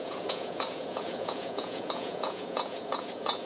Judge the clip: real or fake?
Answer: fake